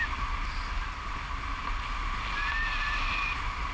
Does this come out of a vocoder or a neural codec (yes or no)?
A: no